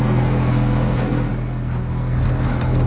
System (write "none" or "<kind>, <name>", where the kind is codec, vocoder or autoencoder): codec, SNAC